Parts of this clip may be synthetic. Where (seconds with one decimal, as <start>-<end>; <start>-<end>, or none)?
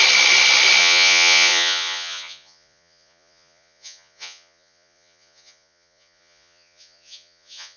0.8-7.8